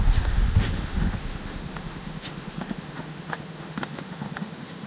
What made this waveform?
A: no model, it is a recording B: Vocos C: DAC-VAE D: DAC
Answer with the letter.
C